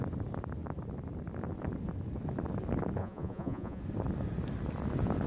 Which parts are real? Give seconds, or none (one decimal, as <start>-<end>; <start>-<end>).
0.0-3.0; 3.8-5.3